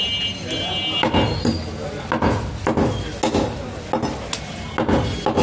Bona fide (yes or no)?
yes